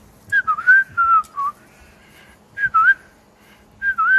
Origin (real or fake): real